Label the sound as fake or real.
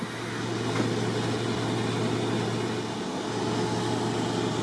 real